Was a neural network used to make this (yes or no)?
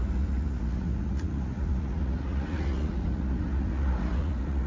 yes